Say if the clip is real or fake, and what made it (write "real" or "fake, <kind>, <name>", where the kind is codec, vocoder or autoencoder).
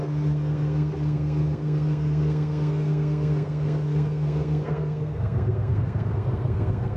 fake, codec, SNAC